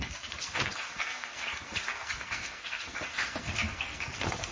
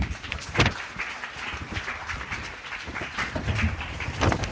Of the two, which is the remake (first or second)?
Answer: first